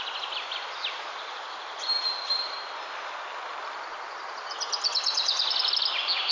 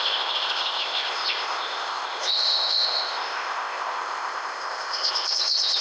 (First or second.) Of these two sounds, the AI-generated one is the second